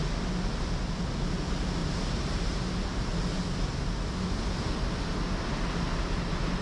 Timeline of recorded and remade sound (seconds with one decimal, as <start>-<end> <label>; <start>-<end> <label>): 0.0-1.8 recorded; 1.8-2.6 remade; 2.6-6.6 recorded